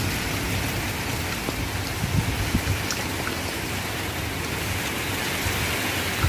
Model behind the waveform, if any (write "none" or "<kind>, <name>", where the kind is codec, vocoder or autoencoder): none